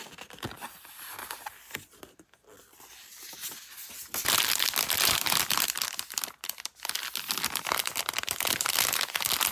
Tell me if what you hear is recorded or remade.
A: recorded